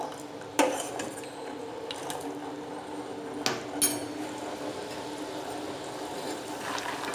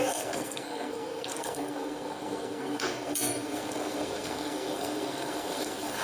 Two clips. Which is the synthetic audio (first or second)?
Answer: second